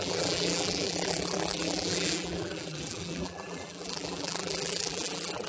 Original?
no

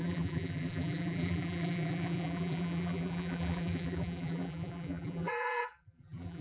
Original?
no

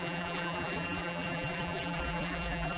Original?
no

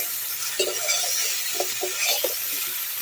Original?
yes